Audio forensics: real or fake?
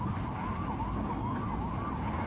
real